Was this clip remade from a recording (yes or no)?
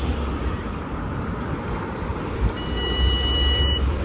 yes